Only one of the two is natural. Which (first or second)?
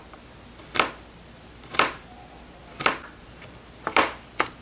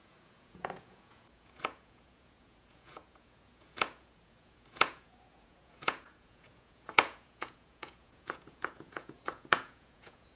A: first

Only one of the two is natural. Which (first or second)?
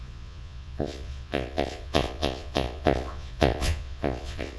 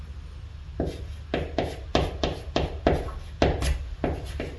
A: second